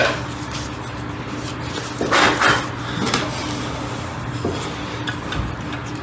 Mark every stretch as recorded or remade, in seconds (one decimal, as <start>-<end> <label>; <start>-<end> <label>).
0.0-6.0 recorded